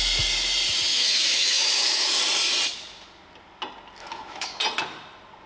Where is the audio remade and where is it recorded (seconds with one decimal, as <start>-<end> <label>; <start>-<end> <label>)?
0.0-0.9 recorded; 0.9-2.2 remade; 2.2-4.0 recorded; 4.0-4.6 remade; 4.6-5.5 recorded